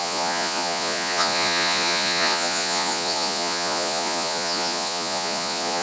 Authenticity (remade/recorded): remade